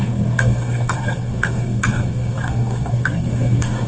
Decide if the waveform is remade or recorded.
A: remade